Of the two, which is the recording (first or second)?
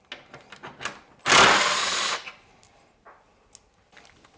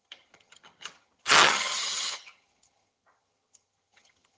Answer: first